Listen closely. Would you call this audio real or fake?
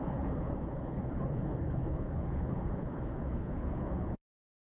fake